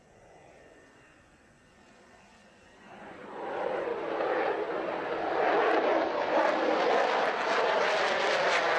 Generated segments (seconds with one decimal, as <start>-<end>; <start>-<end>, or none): 0.0-3.9

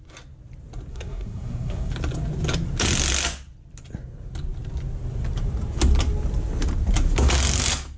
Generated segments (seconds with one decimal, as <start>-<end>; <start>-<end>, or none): 0.9-1.9

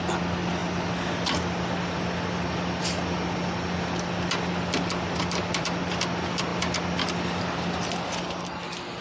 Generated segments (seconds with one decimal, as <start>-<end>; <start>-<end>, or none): none

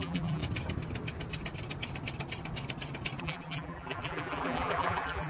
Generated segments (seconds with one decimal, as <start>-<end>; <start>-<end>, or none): 0.0-0.4; 3.2-5.3

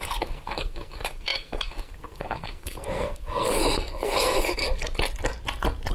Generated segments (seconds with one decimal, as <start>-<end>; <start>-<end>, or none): 0.0-4.6

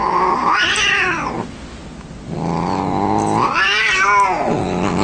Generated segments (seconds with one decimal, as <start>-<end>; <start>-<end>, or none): none